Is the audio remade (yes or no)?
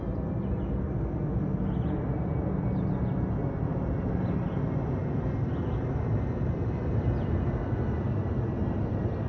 no